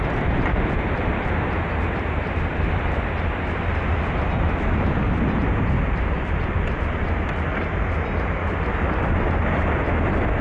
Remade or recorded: recorded